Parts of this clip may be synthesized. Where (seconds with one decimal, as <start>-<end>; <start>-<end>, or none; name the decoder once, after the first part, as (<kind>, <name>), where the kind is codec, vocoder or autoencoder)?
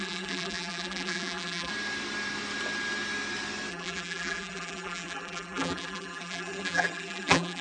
0.0-1.7 (vocoder, BigVGAN v2); 3.7-7.6